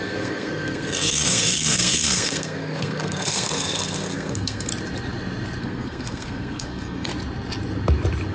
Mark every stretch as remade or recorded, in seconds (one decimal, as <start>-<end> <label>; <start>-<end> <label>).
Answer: 0.0-4.7 remade; 4.7-5.6 recorded; 5.6-7.1 remade; 7.1-8.3 recorded